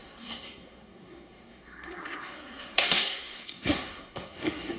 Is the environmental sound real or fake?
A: fake